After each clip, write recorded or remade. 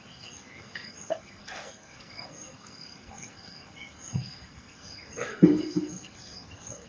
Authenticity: remade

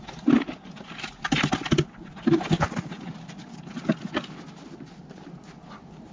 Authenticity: recorded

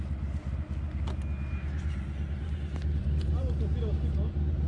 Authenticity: recorded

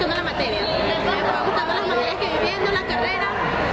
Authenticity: recorded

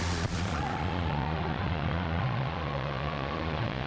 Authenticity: remade